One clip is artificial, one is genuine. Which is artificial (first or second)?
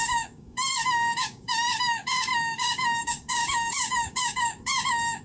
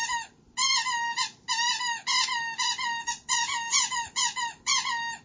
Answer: first